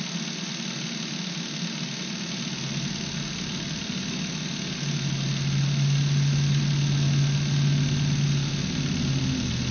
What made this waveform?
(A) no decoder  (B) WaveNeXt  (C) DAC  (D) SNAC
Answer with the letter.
A